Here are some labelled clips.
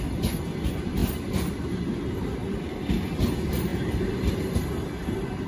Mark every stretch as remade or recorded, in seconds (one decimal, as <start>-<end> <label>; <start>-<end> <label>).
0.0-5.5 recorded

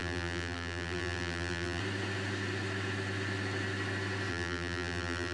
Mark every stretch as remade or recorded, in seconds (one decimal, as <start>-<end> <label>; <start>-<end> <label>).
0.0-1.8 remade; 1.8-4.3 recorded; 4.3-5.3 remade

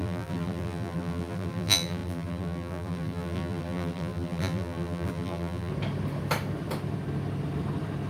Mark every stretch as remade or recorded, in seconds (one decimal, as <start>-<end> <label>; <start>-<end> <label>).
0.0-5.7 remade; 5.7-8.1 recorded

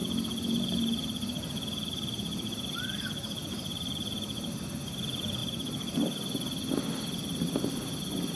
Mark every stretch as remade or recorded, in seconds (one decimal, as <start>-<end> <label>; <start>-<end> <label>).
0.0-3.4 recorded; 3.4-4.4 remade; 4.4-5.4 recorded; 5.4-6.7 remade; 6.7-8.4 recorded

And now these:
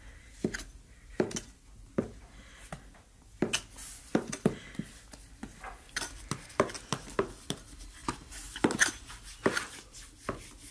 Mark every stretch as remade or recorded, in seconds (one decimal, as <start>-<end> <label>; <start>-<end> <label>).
0.0-10.7 recorded